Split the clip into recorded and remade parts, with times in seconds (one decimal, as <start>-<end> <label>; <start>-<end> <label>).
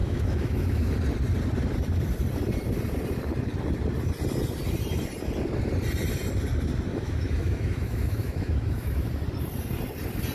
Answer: 0.0-0.9 remade; 0.9-6.9 recorded; 6.9-9.1 remade; 9.1-10.3 recorded